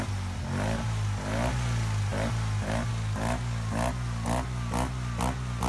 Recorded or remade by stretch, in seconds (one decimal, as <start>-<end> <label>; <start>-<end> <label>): 0.0-5.7 recorded